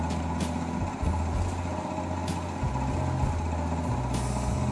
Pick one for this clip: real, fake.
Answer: real